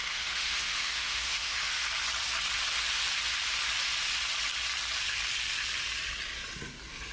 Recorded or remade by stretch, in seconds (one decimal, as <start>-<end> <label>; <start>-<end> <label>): 0.0-1.8 remade; 1.8-7.1 recorded